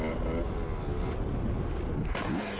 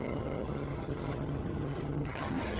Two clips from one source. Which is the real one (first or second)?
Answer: first